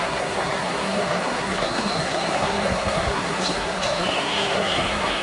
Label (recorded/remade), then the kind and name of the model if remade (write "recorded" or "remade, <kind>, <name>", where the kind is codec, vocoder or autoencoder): remade, codec, SNAC